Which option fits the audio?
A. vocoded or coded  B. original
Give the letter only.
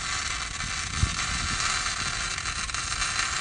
B